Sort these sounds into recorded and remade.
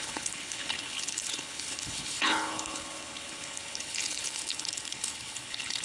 remade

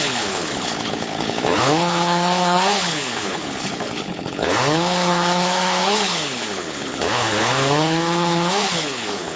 remade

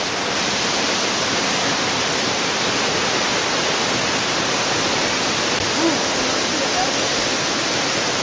recorded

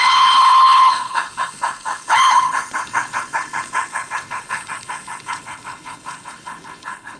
remade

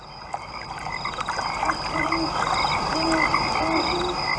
recorded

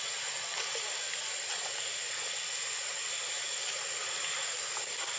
recorded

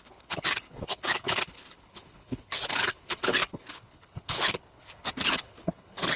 remade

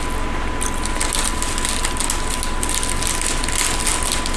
recorded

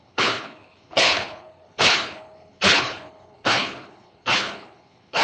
remade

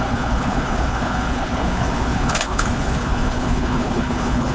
remade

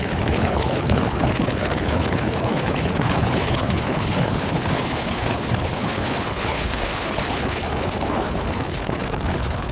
remade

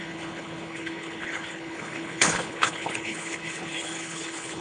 remade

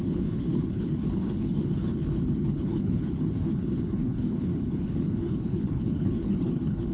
remade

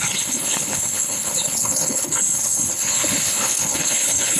remade